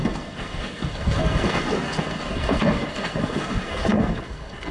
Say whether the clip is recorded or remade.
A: remade